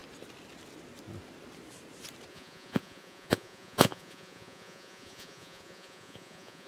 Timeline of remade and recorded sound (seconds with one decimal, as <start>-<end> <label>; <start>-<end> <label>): 0.0-2.3 recorded; 2.3-6.7 remade